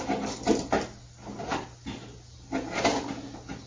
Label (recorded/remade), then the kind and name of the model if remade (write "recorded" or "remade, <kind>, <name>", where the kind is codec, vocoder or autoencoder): recorded